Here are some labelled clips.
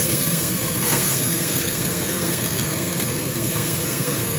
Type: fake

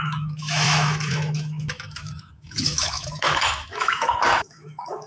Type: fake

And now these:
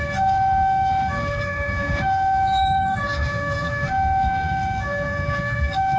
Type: fake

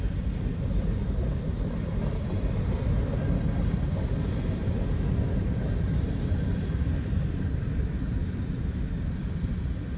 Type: real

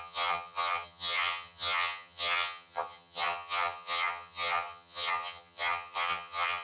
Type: fake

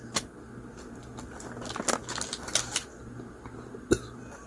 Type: real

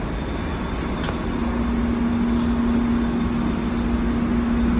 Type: real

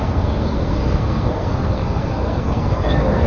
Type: fake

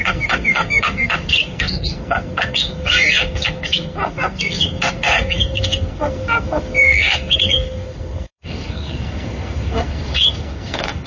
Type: fake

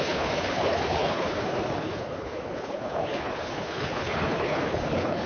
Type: fake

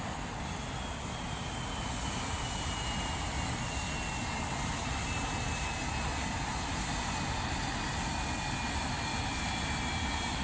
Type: real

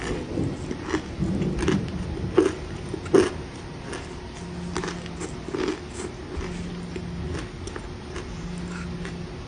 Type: real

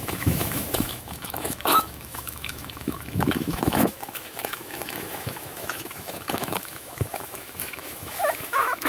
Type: fake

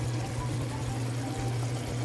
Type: real